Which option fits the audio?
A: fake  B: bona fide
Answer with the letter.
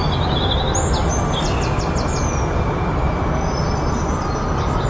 B